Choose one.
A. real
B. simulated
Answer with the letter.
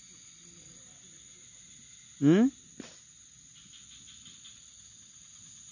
A